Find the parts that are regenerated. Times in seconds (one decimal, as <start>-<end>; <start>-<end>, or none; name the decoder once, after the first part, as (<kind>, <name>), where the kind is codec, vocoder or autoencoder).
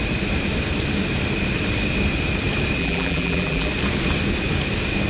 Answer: 2.8-3.7 (vocoder, BigVGAN v2)